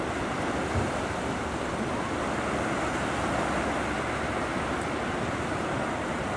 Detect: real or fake real